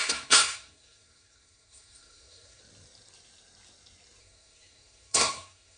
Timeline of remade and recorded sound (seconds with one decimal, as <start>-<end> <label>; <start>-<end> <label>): 0.0-2.6 remade; 2.6-4.2 recorded; 4.2-5.8 remade

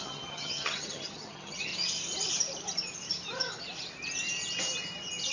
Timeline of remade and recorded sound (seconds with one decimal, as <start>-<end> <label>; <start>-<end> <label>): 0.0-1.7 remade; 1.7-5.3 recorded